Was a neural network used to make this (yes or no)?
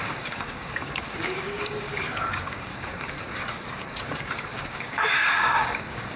yes